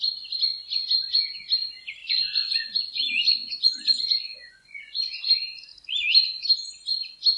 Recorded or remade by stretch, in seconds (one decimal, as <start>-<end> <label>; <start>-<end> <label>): 0.0-2.0 recorded; 2.0-5.2 remade; 5.2-7.4 recorded